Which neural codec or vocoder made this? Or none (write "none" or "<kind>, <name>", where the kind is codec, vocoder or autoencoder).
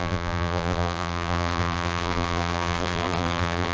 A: vocoder, BigVGAN v2